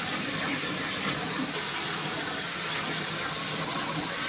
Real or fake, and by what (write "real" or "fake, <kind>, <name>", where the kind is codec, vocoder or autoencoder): real